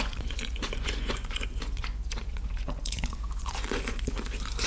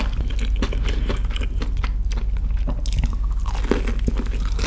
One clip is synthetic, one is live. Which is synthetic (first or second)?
first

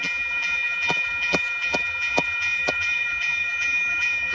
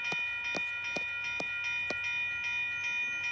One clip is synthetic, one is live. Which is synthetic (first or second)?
first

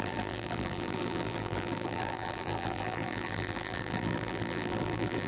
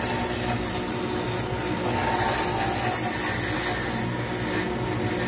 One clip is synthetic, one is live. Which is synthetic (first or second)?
first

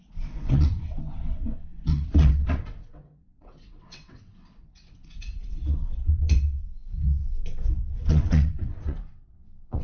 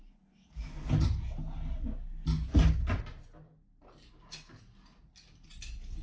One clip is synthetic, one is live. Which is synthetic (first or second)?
first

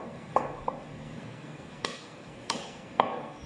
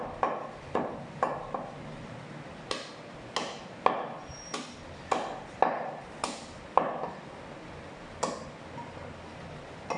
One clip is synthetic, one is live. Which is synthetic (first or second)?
first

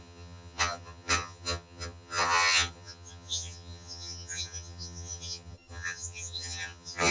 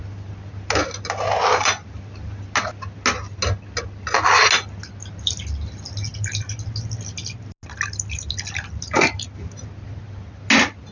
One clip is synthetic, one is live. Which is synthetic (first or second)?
first